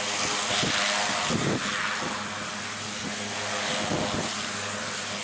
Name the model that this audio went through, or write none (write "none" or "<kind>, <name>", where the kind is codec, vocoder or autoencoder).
none